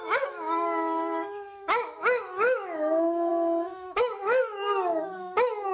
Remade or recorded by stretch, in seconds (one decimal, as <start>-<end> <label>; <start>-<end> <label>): 0.0-5.7 remade